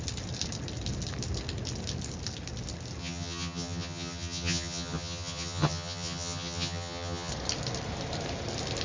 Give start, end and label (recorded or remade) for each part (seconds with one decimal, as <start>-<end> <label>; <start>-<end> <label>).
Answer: 0.0-3.0 recorded; 3.0-7.3 remade; 7.3-8.8 recorded

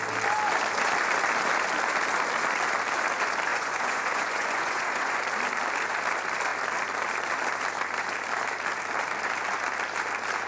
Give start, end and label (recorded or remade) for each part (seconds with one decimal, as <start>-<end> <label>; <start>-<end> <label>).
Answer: 0.0-3.5 recorded; 3.5-5.2 remade; 5.2-10.5 recorded

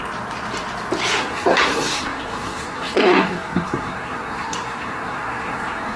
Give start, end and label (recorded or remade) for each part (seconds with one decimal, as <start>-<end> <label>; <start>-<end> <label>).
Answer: 0.0-1.2 recorded; 1.2-6.0 remade

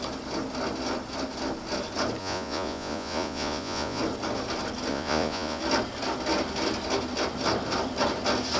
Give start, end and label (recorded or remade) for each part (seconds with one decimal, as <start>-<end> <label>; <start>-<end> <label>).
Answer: 0.0-2.2 recorded; 2.2-4.0 remade; 4.0-4.9 recorded; 4.9-5.6 remade; 5.6-8.6 recorded

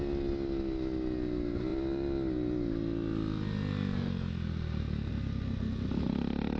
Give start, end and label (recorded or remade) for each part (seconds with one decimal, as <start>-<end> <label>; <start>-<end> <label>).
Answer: 0.0-6.6 recorded

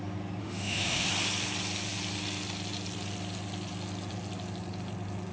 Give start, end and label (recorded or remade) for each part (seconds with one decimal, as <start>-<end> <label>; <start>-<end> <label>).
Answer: 0.0-0.4 recorded; 0.4-1.1 remade; 1.1-5.3 recorded

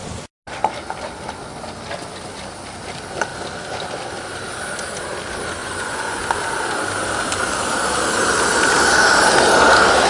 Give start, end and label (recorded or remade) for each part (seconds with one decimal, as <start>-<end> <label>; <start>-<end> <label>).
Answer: 0.0-5.6 recorded; 5.6-6.2 remade; 6.2-10.1 recorded